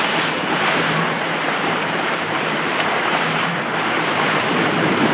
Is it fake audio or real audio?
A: fake